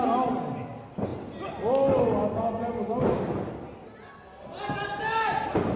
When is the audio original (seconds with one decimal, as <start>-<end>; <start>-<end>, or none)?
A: 0.0-5.8